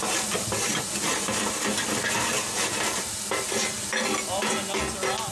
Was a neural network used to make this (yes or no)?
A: no